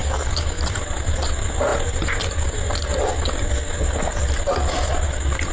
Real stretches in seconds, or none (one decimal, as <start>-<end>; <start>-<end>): 0.6-5.5